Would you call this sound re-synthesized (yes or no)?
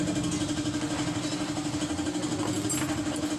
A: no